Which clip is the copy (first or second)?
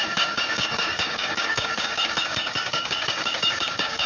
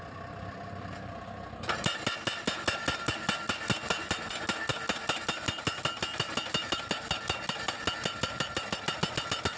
first